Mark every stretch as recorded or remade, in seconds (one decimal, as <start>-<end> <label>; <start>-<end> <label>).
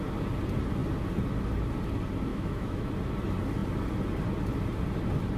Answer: 0.0-2.3 recorded; 2.3-2.9 remade; 2.9-5.4 recorded